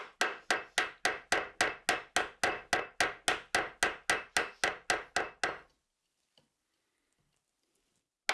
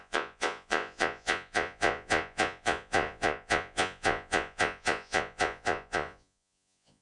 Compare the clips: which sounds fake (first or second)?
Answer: second